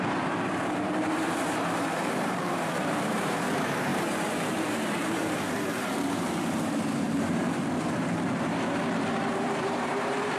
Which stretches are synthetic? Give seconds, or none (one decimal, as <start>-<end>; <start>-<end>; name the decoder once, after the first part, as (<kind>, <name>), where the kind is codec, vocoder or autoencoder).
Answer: 0.0-10.4 (vocoder, BigVGAN v2)

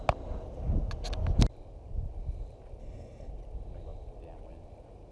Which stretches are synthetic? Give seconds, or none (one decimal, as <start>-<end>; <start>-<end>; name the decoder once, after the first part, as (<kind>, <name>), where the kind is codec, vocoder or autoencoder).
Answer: 2.8-3.3 (codec, HILCodec)

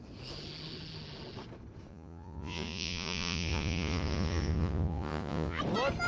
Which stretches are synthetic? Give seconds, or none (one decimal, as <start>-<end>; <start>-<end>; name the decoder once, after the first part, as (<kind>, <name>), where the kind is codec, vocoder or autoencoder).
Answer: 1.9-5.6 (vocoder, Vocos)